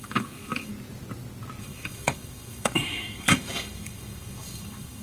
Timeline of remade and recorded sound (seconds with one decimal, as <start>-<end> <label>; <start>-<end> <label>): 0.0-0.7 remade; 0.7-1.6 recorded; 1.6-5.0 remade